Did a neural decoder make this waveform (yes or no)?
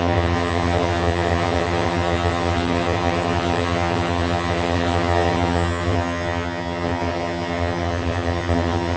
yes